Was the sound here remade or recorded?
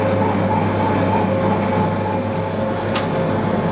recorded